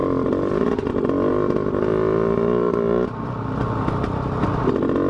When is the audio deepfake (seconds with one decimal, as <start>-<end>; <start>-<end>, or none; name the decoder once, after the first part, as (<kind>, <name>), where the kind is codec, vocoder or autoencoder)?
none

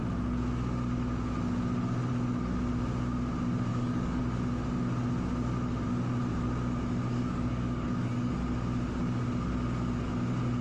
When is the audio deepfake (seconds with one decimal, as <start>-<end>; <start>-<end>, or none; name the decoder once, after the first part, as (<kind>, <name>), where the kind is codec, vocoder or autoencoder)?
3.7-4.2 (codec, DAC); 7.1-8.3